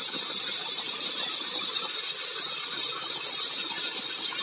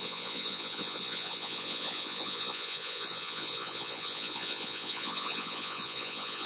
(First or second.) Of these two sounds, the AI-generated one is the second